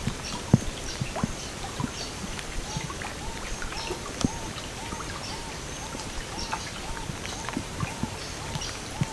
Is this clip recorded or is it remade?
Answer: remade